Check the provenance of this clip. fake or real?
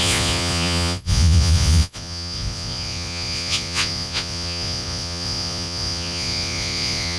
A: fake